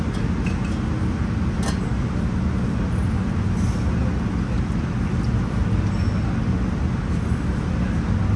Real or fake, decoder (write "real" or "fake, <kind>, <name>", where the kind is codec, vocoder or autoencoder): real